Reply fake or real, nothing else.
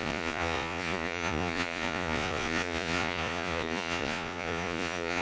fake